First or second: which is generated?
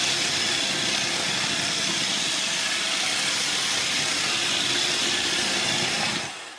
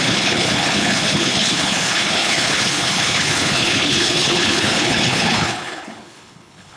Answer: second